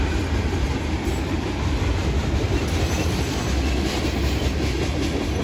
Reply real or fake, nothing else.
real